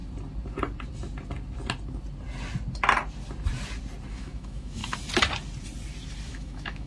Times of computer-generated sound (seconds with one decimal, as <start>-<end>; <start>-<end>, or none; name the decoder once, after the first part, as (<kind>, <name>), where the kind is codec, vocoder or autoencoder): 4.1-4.8 (autoencoder, DAC-VAE); 6.3-6.9